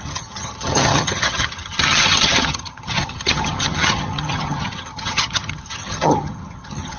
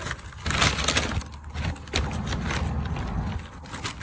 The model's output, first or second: first